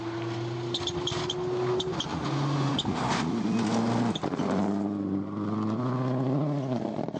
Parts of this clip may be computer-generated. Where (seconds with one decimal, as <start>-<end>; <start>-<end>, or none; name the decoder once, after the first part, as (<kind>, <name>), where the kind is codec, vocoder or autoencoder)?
2.1-2.7 (vocoder, Vocos)